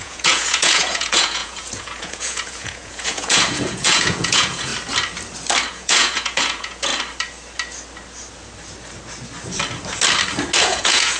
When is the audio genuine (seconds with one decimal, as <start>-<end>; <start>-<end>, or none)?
4.7-5.7; 6.9-10.6